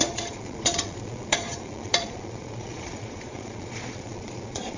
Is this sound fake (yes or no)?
yes